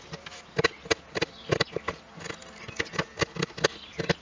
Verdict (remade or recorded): recorded